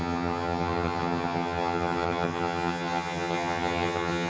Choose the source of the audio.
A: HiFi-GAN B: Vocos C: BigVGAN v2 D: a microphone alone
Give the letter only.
A